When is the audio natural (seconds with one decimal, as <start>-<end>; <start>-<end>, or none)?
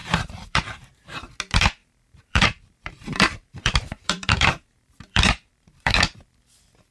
1.3-1.8; 5.9-6.9